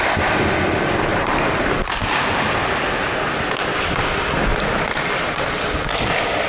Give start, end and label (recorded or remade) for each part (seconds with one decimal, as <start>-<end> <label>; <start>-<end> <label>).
0.0-1.1 recorded; 1.1-2.4 remade; 2.4-6.5 recorded